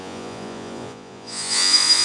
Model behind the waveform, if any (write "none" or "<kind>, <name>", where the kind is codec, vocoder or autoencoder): vocoder, Vocos